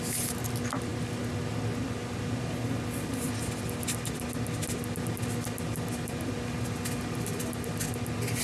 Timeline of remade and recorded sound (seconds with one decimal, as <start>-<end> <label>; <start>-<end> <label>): 0.0-8.4 recorded